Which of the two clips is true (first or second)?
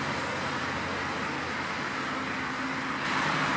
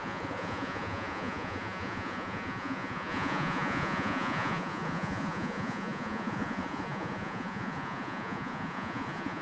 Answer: first